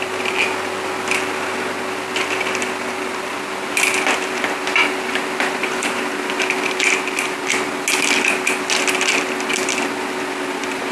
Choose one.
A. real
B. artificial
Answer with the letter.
A